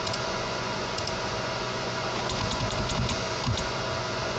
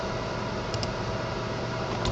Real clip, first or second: second